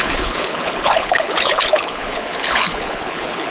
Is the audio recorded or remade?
remade